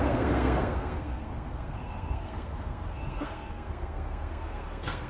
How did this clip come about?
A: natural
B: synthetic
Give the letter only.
B